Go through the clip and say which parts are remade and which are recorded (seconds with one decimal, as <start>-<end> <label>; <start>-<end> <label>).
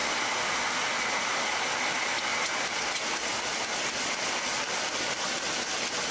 0.0-6.1 recorded